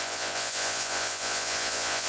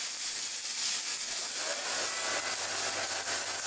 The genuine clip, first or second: second